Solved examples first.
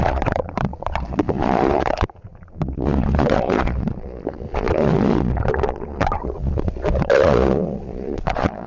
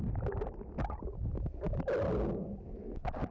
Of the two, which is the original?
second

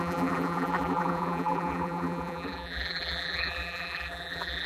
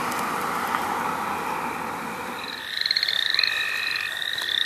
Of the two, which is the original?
second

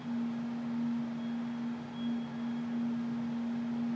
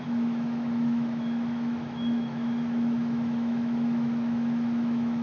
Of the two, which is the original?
first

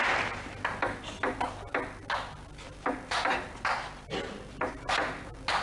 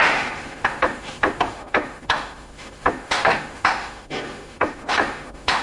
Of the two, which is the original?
first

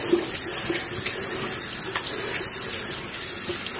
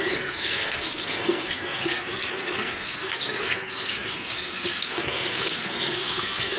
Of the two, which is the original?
first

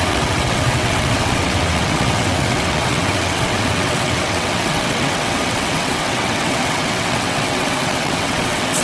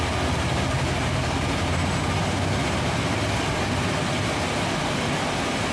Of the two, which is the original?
second